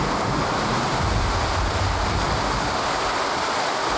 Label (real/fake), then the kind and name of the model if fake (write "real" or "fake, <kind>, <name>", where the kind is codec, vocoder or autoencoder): real